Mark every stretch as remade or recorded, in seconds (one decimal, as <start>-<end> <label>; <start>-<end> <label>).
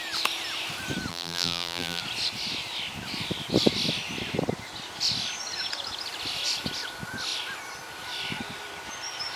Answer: 0.0-1.1 recorded; 1.1-2.0 remade; 2.0-9.4 recorded